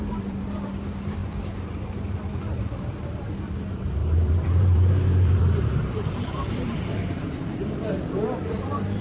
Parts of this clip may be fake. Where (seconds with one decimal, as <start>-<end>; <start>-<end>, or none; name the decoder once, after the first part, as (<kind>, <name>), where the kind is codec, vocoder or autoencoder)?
0.0-9.0 (vocoder, BigVGAN v2)